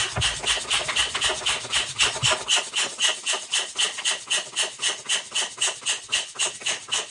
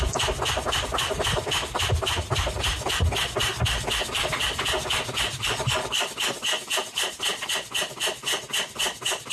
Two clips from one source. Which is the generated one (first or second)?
second